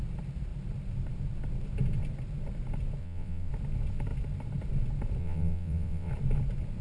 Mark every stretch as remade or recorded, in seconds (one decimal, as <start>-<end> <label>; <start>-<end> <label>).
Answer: 0.0-3.0 recorded; 3.0-3.5 remade; 3.5-5.2 recorded; 5.2-6.1 remade; 6.1-6.8 recorded